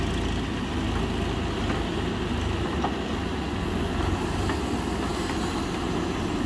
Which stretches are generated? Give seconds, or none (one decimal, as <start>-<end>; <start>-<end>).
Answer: none